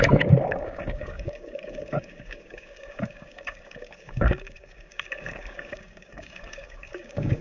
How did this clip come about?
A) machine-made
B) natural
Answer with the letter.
A